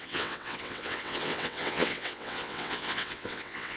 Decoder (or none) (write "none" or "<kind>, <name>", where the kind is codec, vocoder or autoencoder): vocoder, WaveNeXt